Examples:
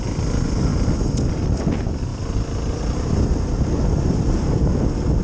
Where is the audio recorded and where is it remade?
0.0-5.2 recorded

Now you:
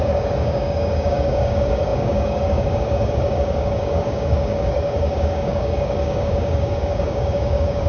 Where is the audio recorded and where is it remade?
0.0-7.9 remade

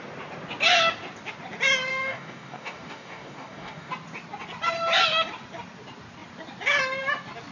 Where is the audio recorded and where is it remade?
0.0-1.9 recorded; 1.9-3.9 remade; 3.9-7.5 recorded

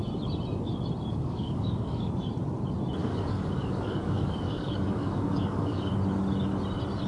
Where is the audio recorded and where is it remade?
0.0-1.1 recorded; 1.1-2.1 remade; 2.1-3.0 recorded; 3.0-5.9 remade; 5.9-7.1 recorded

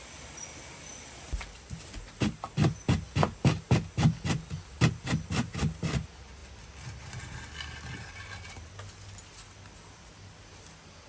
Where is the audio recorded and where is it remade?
0.0-11.1 recorded

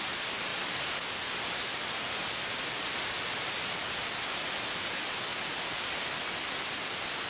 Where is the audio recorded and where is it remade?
0.0-7.3 recorded

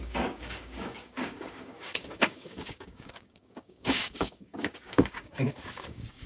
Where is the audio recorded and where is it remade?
0.0-6.3 remade